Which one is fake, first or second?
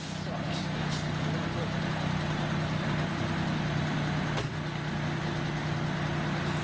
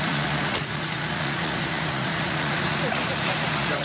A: second